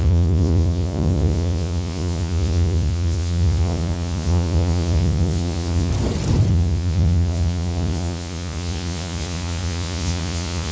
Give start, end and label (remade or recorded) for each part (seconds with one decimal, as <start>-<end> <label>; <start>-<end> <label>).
0.0-5.9 remade; 5.9-6.5 recorded; 6.5-10.7 remade